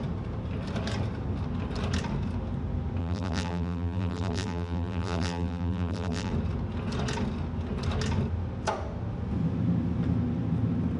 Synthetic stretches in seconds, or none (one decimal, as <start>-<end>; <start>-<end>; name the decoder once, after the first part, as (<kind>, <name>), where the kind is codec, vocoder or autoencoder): 3.0-6.3 (vocoder, BigVGAN v2)